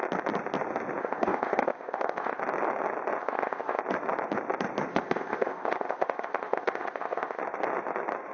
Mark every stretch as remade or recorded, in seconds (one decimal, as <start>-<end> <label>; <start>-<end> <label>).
0.0-1.0 recorded; 1.0-2.4 remade; 2.4-3.2 recorded; 3.2-3.8 remade; 3.8-4.9 recorded; 4.9-7.4 remade; 7.4-8.3 recorded